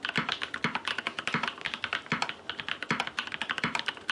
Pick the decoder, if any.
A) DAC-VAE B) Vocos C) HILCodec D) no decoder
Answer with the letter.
D